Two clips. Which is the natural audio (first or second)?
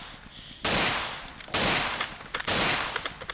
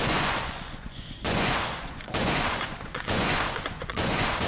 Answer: first